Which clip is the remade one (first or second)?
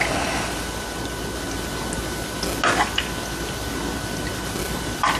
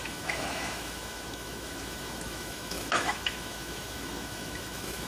second